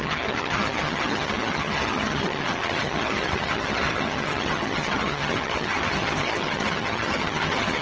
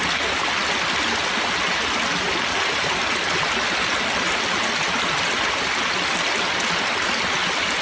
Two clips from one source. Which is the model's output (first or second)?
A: first